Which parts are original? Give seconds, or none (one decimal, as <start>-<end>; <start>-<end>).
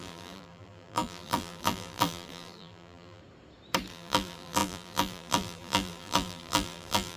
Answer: 3.2-3.9